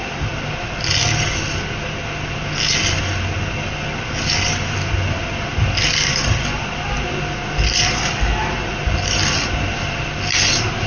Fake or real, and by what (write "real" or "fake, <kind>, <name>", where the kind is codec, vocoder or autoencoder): real